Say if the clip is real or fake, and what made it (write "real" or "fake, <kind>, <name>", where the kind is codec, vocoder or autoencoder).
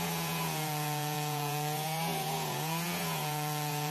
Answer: fake, vocoder, Vocos